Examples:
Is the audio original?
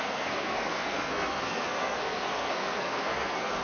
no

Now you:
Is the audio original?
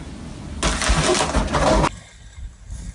yes